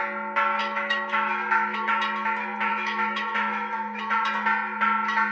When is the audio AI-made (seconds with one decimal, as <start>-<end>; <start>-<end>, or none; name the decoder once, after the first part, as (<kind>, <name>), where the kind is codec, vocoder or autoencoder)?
0.6-1.9 (autoencoder, DAC-VAE); 2.7-4.2